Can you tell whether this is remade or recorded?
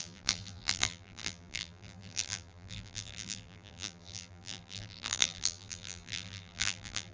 remade